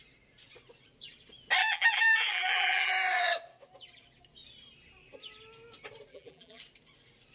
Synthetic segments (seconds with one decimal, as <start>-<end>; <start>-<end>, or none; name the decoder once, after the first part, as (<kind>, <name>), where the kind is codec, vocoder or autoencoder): 1.6-2.9 (vocoder, BigVGAN v2); 6.1-6.6

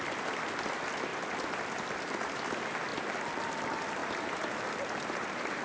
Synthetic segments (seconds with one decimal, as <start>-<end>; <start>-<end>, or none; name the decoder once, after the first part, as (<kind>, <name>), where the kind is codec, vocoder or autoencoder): 0.0-1.1 (vocoder, BigVGAN v2); 1.6-4.0; 4.6-5.6

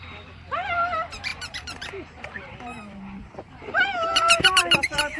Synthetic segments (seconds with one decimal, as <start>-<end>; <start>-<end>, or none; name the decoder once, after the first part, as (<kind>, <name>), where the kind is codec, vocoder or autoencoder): 0.0-5.2 (vocoder, BigVGAN v2)

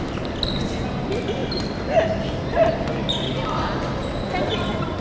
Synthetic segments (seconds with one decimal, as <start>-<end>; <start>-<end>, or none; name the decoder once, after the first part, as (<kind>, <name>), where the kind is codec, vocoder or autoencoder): none

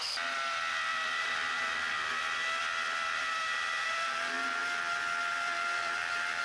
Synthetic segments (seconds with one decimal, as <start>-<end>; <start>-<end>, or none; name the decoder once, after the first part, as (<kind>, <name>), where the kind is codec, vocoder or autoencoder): 0.9-1.9 (vocoder, BigVGAN v2); 2.6-4.6; 5.3-6.4

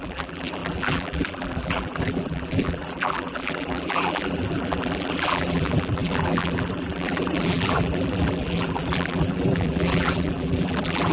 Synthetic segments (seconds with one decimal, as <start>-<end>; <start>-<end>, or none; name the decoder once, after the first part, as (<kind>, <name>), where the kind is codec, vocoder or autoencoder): 0.0-11.1 (vocoder, BigVGAN v2)

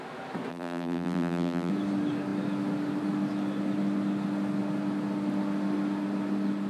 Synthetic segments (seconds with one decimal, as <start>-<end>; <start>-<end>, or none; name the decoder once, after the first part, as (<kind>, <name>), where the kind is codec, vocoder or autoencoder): 0.5-1.7 (vocoder, BigVGAN v2)

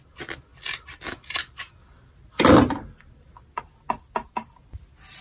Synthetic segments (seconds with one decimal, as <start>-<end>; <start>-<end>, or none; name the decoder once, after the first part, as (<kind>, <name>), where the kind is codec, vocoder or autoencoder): none